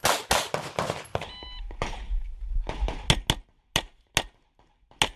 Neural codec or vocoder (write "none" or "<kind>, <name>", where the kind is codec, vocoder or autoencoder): none